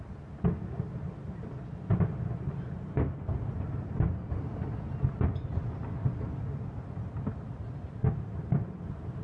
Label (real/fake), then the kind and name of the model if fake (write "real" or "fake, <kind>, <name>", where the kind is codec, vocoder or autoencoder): real